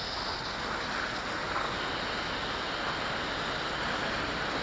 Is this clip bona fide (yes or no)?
yes